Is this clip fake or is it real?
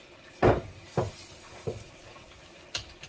real